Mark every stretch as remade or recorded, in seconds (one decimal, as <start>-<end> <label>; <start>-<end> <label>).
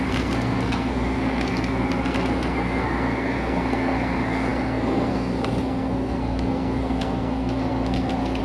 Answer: 0.0-8.4 remade